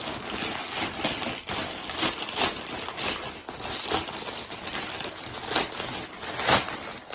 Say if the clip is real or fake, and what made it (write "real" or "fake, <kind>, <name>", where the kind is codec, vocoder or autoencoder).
real